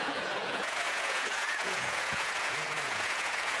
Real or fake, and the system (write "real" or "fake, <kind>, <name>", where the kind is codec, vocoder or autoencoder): fake, vocoder, Vocos